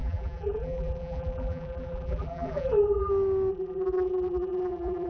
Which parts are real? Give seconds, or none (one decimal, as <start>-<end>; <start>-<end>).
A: 3.1-3.5